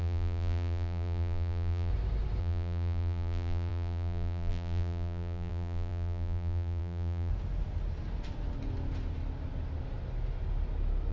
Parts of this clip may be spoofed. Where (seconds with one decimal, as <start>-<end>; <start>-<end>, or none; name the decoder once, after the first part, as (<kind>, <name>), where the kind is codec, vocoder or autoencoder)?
0.0-1.9 (vocoder, BigVGAN v2); 2.4-7.3